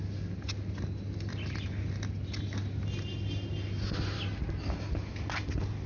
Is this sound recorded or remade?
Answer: recorded